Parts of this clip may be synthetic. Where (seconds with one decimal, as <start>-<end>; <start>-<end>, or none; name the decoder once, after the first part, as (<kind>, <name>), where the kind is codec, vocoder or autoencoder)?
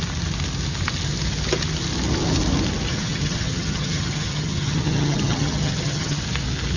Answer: 2.9-6.2 (vocoder, HiFi-GAN)